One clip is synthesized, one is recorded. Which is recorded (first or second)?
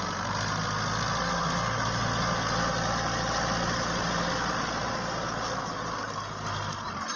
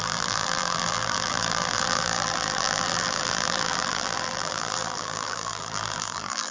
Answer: first